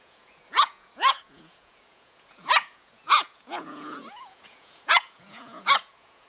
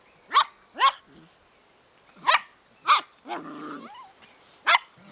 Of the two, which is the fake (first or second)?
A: first